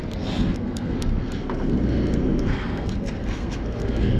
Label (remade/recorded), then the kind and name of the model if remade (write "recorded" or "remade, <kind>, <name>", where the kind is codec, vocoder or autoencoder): remade, codec, SNAC